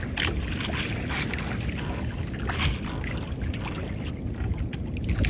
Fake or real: real